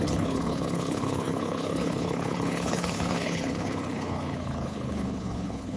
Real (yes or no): no